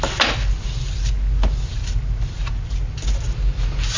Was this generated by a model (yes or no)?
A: no